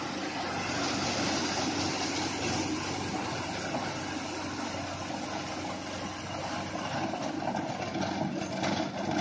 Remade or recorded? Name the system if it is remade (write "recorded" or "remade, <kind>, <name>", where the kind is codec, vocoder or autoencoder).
recorded